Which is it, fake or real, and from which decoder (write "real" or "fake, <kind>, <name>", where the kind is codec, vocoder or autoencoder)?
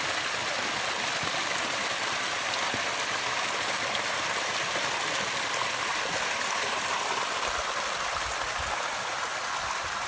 real